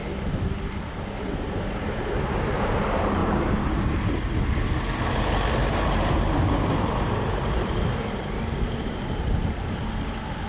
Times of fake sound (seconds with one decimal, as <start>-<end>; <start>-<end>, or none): 0.8-3.2; 5.9-9.4